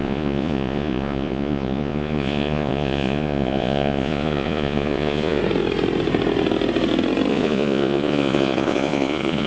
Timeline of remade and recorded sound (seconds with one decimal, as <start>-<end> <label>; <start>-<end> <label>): 0.0-5.4 remade; 5.4-7.3 recorded; 7.3-9.5 remade